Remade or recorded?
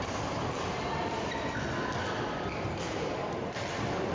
recorded